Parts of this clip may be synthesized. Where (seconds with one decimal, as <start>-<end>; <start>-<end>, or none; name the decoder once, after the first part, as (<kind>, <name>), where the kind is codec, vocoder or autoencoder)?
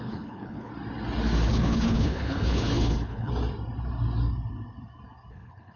0.0-0.7 (codec, HILCodec); 1.5-3.3; 5.3-5.8